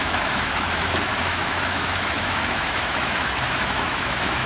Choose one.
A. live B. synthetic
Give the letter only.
B